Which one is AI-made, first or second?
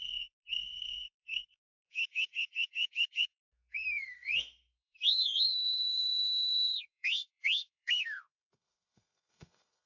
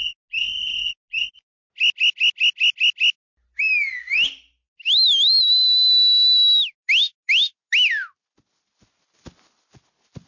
first